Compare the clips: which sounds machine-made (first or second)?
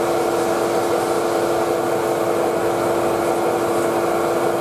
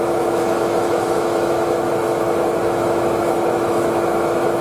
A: second